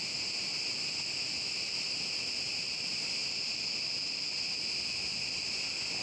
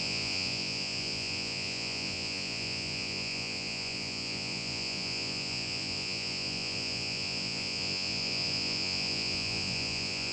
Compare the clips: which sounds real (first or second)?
first